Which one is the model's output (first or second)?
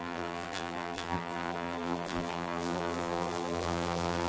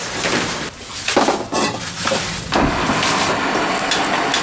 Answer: first